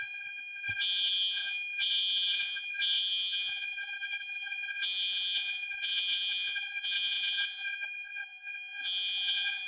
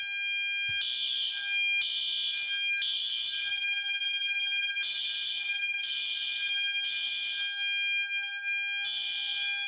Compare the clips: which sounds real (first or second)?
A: second